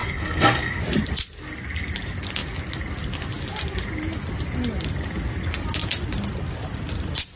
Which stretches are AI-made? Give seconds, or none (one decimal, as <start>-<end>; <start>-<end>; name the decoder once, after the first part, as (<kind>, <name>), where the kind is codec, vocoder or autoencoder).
0.0-0.8 (codec, DAC)